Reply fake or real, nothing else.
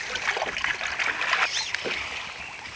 real